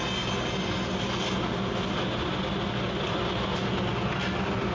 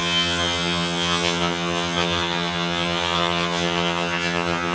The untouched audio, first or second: first